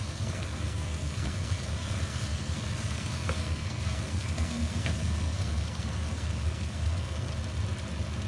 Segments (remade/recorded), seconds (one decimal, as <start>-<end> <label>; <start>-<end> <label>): 0.0-7.3 remade; 7.3-8.3 recorded